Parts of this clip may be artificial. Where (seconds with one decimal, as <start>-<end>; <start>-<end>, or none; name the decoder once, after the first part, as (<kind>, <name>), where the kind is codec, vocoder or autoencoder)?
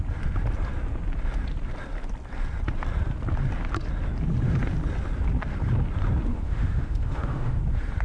6.3-7.6 (autoencoder, DAC-VAE)